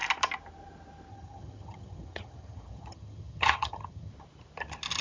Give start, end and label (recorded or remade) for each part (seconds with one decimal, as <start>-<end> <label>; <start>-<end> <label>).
0.0-1.1 recorded; 1.1-4.1 remade; 4.1-5.0 recorded